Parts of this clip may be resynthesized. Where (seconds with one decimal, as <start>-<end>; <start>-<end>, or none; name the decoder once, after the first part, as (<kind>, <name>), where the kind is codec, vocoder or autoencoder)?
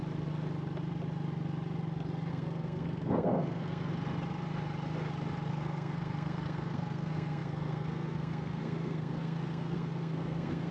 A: 2.3-3.9 (codec, SNAC); 5.5-10.7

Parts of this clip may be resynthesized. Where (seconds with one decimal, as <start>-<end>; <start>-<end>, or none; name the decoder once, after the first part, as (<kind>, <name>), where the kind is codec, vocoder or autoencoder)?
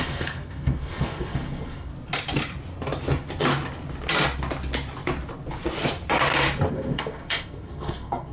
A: 0.0-1.9 (codec, SNAC); 6.7-8.3